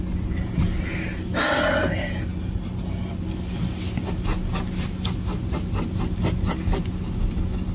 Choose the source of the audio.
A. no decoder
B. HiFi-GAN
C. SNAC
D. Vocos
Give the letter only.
A